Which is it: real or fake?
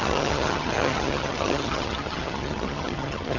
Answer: fake